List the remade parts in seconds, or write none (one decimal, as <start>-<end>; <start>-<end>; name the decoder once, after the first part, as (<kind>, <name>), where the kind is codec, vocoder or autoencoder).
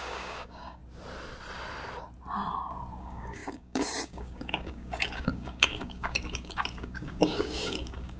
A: 0.0-0.8 (codec, DAC); 3.0-8.2